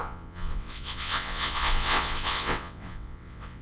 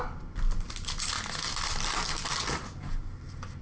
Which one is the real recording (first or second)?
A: second